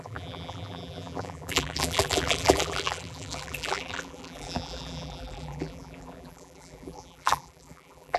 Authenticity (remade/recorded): remade